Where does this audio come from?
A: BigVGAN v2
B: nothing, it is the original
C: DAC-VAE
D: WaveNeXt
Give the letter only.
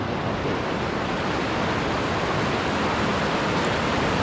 B